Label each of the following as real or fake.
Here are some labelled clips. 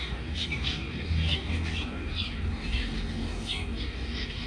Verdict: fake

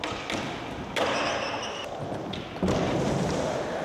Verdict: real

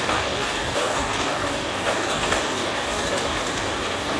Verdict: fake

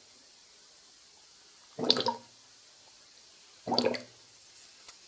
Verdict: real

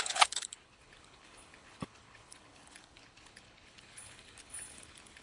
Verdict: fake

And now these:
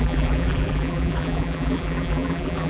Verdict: fake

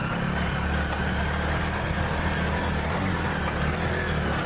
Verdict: real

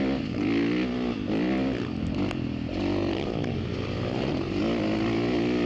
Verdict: real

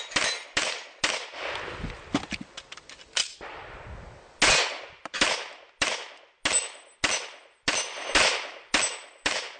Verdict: real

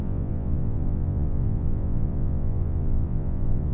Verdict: fake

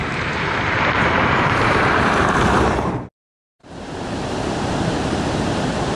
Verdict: fake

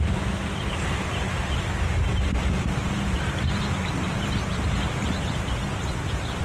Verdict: real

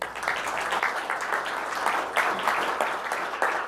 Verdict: real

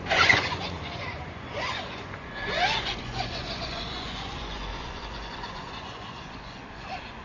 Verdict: fake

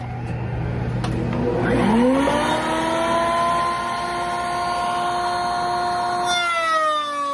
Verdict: real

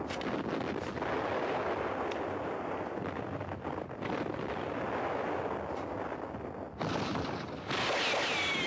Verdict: real